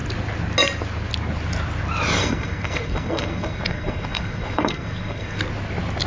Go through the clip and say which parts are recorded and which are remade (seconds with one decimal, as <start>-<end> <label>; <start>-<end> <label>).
0.0-2.2 recorded; 2.2-5.4 remade; 5.4-6.1 recorded